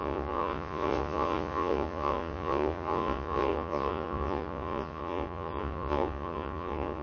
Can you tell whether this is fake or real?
fake